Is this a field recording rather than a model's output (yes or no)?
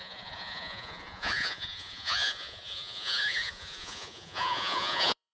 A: no